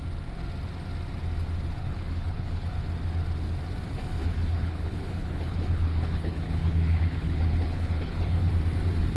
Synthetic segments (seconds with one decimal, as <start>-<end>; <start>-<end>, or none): 1.8-2.7; 4.2-8.5